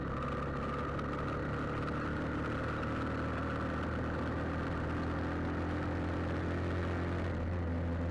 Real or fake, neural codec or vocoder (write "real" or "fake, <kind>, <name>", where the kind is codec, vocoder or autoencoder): real